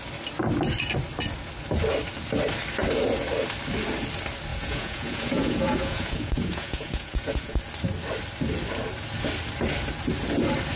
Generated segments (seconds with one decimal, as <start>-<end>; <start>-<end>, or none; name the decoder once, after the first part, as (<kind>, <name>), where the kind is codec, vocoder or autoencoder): 4.5-7.6 (vocoder, Vocos)